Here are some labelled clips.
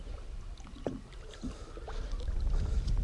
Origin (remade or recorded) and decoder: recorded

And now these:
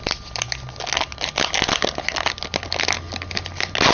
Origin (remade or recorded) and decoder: recorded